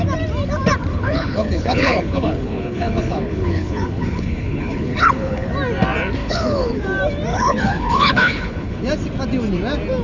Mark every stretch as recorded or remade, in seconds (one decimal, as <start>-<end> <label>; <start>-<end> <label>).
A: 0.0-0.9 recorded; 0.9-5.5 remade; 5.5-6.2 recorded; 6.2-6.8 remade; 6.8-7.3 recorded; 7.3-8.8 remade; 8.8-10.0 recorded